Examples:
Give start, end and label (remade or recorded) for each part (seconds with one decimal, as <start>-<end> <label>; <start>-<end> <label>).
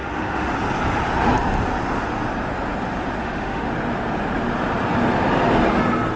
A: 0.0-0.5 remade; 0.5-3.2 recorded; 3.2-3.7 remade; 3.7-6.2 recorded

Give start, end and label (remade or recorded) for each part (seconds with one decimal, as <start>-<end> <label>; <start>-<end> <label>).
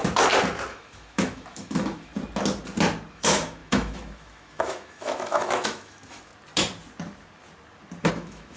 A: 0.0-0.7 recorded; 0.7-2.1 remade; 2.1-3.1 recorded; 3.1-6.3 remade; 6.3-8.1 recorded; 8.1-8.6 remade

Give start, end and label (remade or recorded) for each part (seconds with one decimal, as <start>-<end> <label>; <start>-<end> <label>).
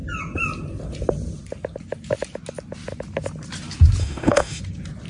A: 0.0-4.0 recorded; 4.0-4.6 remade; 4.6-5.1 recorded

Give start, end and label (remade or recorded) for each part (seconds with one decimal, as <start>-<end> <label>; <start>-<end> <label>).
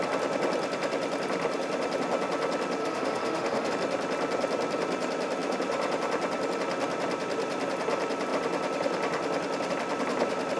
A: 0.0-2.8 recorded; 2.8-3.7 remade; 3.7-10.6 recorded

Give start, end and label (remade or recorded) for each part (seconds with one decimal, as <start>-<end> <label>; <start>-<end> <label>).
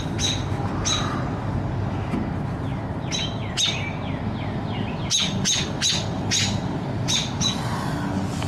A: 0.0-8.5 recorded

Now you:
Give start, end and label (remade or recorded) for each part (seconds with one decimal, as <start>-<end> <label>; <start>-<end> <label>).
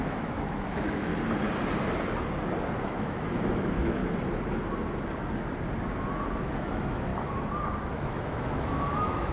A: 0.0-1.1 remade; 1.1-2.8 recorded; 2.8-4.0 remade; 4.0-6.4 recorded; 6.4-7.1 remade; 7.1-7.9 recorded; 7.9-9.3 remade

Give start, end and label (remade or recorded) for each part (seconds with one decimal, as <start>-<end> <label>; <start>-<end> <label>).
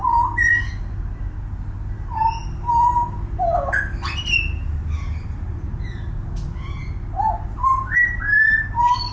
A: 0.0-9.1 recorded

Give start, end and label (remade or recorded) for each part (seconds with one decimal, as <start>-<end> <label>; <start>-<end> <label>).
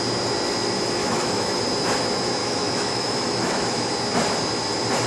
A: 0.0-1.0 recorded; 1.0-1.6 remade; 1.6-2.4 recorded; 2.4-3.9 remade; 3.9-5.1 recorded